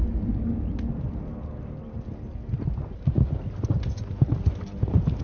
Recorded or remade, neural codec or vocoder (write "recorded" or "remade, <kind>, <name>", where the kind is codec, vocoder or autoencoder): recorded